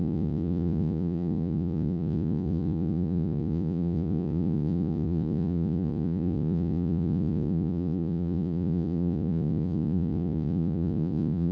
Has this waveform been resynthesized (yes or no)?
yes